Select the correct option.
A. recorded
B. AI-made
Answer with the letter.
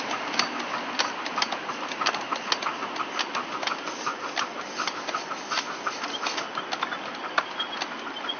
A